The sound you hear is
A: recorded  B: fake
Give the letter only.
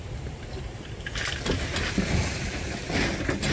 A